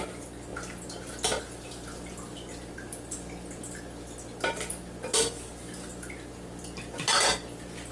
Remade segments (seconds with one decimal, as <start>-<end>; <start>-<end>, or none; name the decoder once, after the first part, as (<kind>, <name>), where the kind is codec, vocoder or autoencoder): none